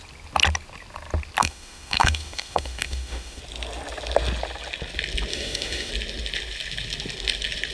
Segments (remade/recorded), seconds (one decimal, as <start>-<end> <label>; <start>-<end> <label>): 0.0-1.4 recorded; 1.4-3.4 remade; 3.4-5.3 recorded; 5.3-5.9 remade; 5.9-7.7 recorded